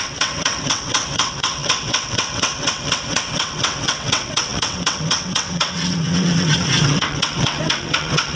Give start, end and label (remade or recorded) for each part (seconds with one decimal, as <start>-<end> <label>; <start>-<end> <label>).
0.0-8.4 remade